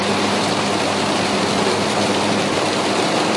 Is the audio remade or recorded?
remade